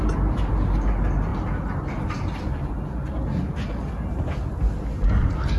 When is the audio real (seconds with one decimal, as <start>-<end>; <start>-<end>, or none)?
0.0-5.6